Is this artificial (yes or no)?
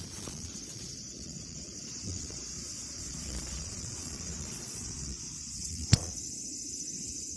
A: yes